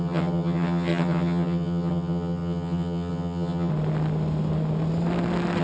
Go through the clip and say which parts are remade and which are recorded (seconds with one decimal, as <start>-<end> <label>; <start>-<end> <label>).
0.0-3.7 remade; 3.7-5.6 recorded

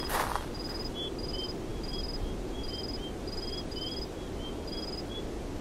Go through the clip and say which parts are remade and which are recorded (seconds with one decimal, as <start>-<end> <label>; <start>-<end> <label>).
0.0-5.6 recorded

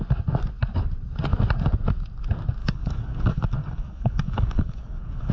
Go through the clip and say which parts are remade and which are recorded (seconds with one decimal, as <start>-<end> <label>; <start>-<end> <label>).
0.0-2.6 recorded; 2.6-5.3 remade

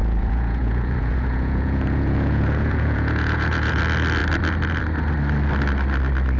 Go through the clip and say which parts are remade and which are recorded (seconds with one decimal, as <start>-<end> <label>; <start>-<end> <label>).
0.0-3.8 remade; 3.8-6.4 recorded

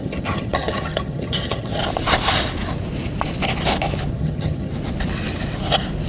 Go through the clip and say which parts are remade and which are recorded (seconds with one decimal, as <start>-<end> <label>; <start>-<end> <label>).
0.0-1.8 remade; 1.8-4.1 recorded; 4.1-4.7 remade; 4.7-6.1 recorded